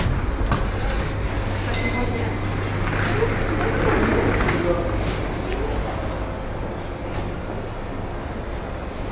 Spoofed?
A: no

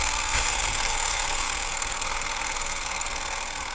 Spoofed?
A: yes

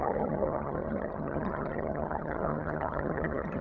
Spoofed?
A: yes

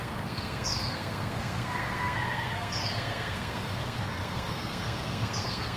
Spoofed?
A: yes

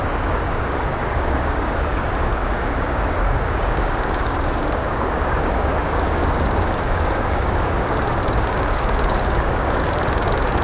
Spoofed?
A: yes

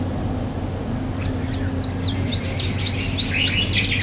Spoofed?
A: no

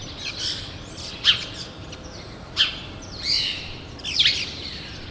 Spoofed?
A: no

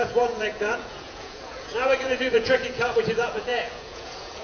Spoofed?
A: yes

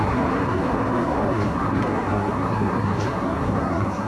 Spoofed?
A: yes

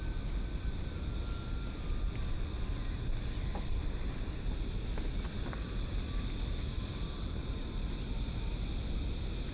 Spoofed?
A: no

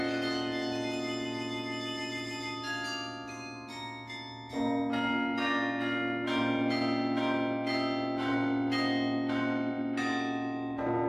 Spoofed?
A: no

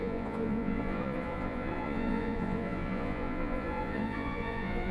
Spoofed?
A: yes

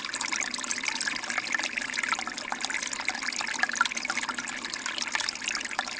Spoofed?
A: no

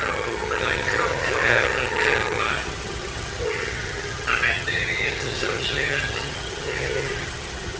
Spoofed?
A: yes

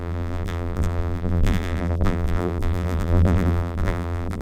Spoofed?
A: yes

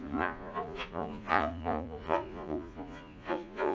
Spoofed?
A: yes